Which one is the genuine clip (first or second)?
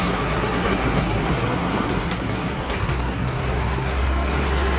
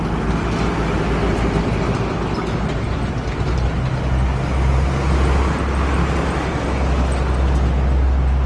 second